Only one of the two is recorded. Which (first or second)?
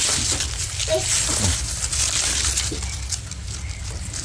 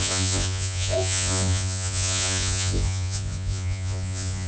first